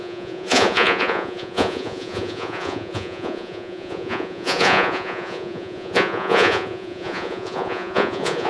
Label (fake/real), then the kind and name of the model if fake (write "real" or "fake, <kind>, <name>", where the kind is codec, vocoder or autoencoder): fake, vocoder, Vocos